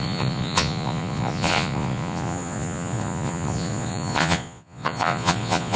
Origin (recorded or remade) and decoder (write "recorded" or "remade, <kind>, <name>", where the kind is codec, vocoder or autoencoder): remade, vocoder, Vocos